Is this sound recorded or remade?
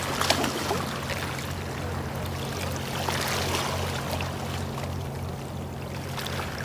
recorded